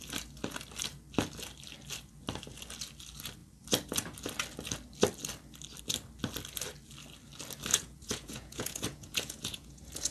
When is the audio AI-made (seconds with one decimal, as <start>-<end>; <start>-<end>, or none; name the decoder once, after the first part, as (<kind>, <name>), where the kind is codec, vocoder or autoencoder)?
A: 7.7-10.1 (vocoder, Vocos)